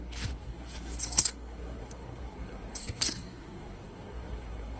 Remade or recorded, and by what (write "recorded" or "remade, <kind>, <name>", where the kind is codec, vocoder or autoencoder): remade, codec, SNAC